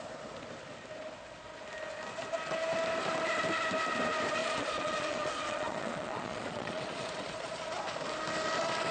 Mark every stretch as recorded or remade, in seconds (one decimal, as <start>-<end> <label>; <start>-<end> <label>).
0.0-4.4 recorded; 4.4-7.7 remade; 7.7-8.9 recorded